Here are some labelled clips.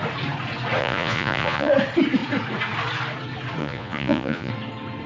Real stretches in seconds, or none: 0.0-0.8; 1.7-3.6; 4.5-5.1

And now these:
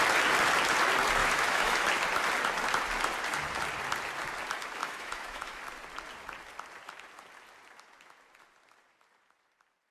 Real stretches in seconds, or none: 0.0-1.2; 1.8-4.8; 5.6-9.9

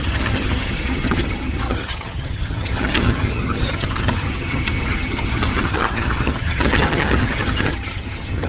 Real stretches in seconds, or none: none

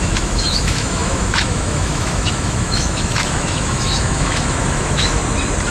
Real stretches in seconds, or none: 5.2-5.7

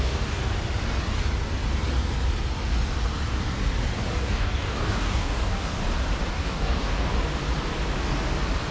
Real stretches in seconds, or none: 0.4-4.2; 5.8-6.3; 7.1-8.7

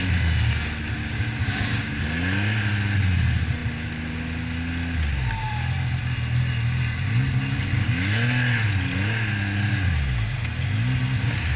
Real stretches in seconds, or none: 0.0-1.0; 1.9-11.6

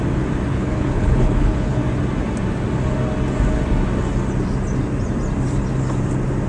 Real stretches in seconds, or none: 0.0-0.5; 1.8-6.5

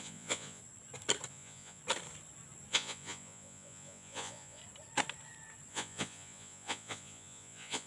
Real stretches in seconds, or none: 0.6-1.3; 1.8-2.7; 4.6-5.7